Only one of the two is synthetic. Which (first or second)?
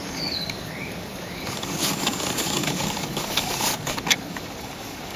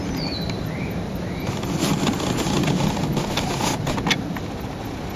first